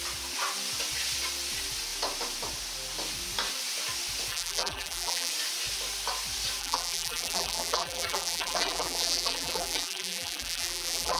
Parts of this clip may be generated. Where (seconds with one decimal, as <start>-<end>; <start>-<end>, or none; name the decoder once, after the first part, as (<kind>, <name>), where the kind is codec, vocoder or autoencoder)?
4.3-5.3 (vocoder, BigVGAN v2); 6.6-11.2